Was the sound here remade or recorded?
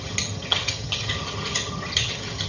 remade